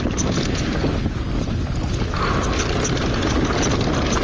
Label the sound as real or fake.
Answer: real